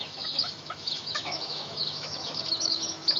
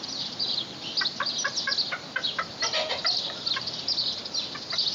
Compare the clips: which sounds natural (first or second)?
second